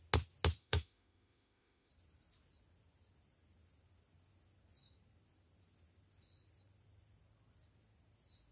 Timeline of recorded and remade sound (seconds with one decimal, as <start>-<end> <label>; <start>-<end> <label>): 0.0-0.6 recorded; 0.6-1.9 remade; 1.9-8.5 recorded